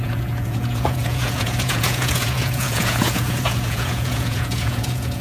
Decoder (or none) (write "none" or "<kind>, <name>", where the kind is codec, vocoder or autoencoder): vocoder, Vocos